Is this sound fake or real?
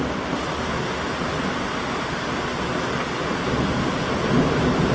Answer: real